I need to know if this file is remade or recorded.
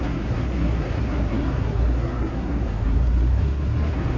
remade